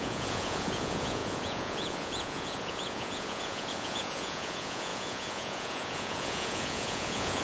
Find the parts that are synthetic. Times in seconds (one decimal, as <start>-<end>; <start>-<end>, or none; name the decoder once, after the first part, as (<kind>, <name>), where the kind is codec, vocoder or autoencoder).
0.0-7.4 (vocoder, Vocos)